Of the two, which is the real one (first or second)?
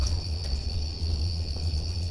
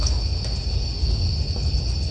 second